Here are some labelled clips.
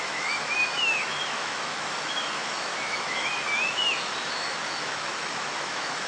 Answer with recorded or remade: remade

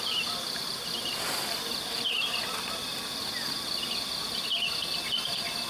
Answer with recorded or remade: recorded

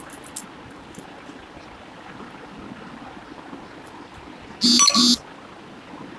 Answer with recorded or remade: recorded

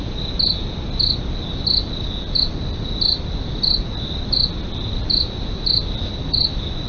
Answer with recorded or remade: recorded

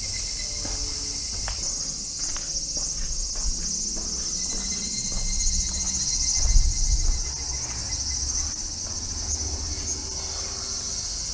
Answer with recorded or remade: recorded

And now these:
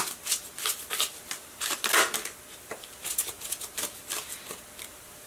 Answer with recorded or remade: recorded